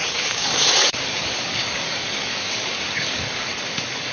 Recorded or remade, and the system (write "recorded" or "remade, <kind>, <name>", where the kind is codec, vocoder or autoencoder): remade, codec, DAC